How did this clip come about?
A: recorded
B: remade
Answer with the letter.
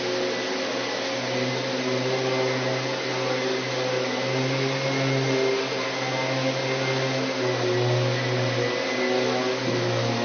A